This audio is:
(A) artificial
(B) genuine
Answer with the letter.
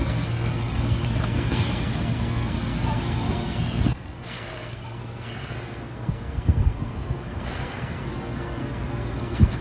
A